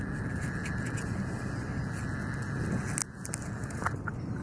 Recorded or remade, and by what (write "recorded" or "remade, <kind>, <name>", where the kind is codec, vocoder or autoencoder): recorded